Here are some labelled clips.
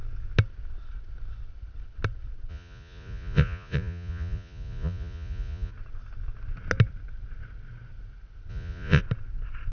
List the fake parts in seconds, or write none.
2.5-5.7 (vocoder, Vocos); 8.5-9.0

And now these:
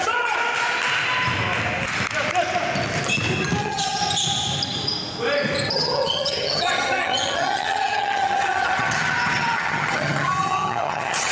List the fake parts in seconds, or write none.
0.0-0.4 (vocoder, HiFi-GAN); 3.6-4.0; 5.7-11.3

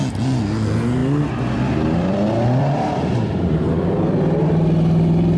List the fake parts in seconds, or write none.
1.0-4.2 (vocoder, BigVGAN v2)

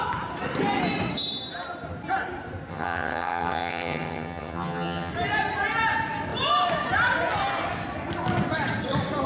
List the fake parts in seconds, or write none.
2.7-5.1 (vocoder, HiFi-GAN)

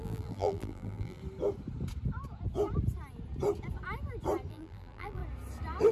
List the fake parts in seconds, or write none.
0.0-1.2 (vocoder, BigVGAN v2); 4.5-5.2

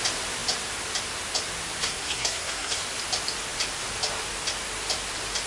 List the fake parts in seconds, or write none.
1.8-2.8 (codec, SNAC)

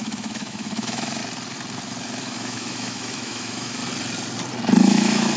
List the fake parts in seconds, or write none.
0.0-1.2 (autoencoder, DAC-VAE); 2.2-3.8; 4.8-5.4